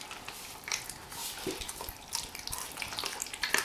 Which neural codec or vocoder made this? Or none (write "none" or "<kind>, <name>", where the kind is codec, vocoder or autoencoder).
none